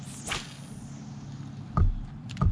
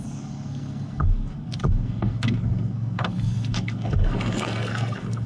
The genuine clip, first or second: first